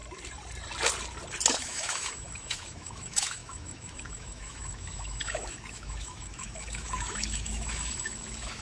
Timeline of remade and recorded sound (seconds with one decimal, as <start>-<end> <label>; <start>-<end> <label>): 0.0-1.5 recorded; 1.5-8.6 remade